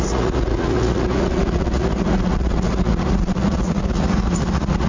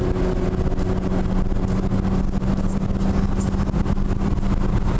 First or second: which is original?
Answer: second